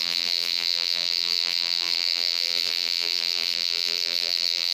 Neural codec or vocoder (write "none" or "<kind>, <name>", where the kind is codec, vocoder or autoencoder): vocoder, BigVGAN v2